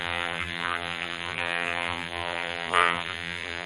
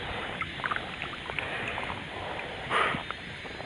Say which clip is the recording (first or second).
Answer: second